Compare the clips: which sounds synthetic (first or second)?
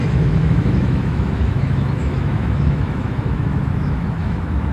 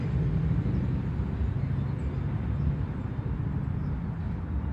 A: first